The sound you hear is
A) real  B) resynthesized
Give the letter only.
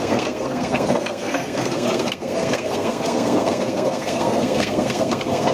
B